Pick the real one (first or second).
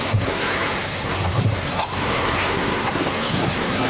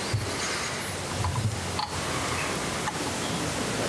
second